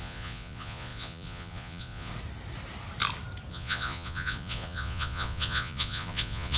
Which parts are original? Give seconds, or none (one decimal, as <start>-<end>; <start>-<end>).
2.1-3.5